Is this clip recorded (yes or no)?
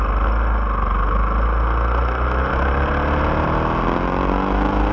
yes